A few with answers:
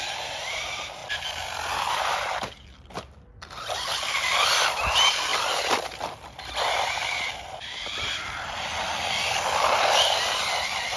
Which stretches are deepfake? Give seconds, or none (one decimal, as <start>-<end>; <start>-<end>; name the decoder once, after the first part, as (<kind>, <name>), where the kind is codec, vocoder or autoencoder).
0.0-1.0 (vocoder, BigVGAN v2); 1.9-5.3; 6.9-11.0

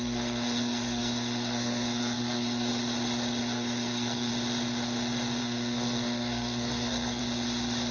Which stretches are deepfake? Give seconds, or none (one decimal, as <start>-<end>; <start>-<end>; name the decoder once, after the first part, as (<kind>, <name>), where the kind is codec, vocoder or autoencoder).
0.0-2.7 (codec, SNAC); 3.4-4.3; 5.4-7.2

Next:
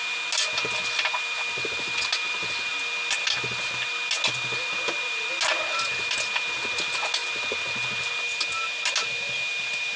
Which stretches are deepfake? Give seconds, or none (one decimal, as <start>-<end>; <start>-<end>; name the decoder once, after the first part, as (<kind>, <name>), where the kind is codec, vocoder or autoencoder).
none